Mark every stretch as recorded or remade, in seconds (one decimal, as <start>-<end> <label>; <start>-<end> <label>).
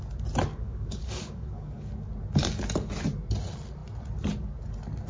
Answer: 0.0-0.5 recorded; 0.5-1.9 remade; 1.9-5.1 recorded